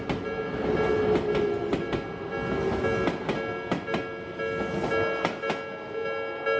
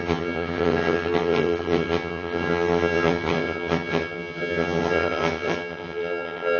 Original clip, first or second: first